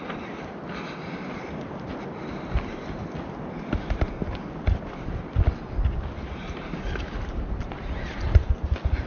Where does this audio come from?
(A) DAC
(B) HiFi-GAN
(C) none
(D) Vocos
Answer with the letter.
C